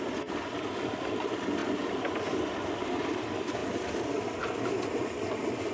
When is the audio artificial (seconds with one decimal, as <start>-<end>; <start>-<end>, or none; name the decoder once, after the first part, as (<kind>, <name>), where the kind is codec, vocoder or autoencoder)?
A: none